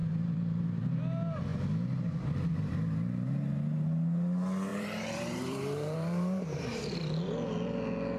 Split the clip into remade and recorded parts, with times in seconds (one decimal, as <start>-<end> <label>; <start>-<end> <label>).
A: 0.0-1.0 remade; 1.0-4.7 recorded; 4.7-6.8 remade; 6.8-8.2 recorded